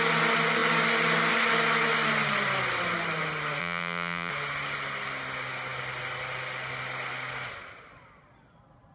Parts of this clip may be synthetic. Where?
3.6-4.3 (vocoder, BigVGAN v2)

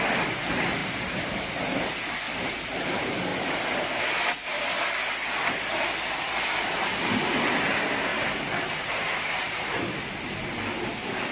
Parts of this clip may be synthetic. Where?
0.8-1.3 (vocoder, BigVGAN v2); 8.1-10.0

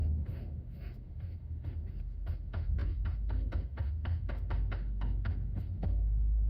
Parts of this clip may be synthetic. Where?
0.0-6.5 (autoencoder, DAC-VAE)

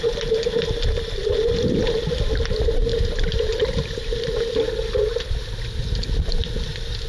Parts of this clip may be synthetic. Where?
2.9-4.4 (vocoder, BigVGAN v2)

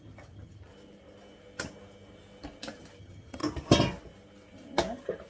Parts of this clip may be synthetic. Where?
0.0-0.7 (vocoder, HiFi-GAN); 3.0-3.4